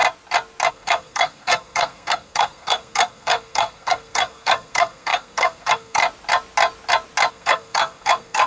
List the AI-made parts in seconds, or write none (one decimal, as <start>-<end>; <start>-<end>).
0.7-6.0; 7.3-8.5